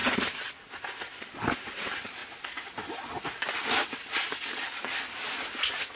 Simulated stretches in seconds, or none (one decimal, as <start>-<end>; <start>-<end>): none